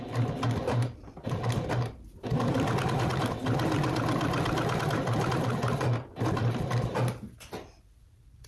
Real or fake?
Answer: real